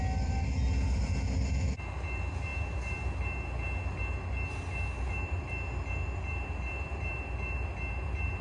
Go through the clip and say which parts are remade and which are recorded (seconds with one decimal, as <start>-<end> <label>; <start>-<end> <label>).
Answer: 0.0-8.4 recorded